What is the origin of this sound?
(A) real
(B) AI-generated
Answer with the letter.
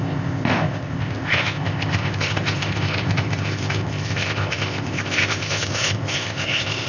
B